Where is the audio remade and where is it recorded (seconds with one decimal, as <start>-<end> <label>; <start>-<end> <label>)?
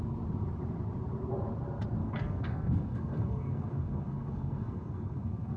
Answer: 0.0-2.0 recorded; 2.0-5.6 remade